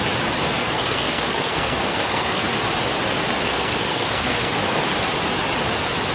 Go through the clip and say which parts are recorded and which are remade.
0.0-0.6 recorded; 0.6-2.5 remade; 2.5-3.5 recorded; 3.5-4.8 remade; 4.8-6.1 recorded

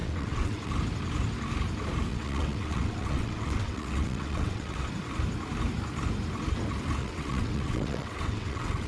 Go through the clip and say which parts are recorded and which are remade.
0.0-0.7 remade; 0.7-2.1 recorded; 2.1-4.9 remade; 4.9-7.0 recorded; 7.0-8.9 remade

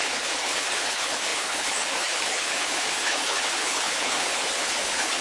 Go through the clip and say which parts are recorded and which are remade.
0.0-5.2 remade

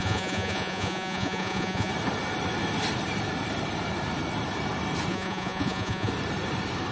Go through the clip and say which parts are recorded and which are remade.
0.0-1.9 remade; 1.9-5.1 recorded; 5.1-6.1 remade; 6.1-6.9 recorded